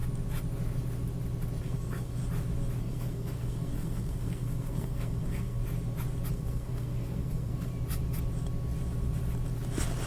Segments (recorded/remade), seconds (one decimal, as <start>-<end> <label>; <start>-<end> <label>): 0.0-1.6 recorded; 1.6-2.2 remade; 2.2-2.8 recorded; 2.8-5.6 remade; 5.6-6.3 recorded; 6.3-7.7 remade; 7.7-10.1 recorded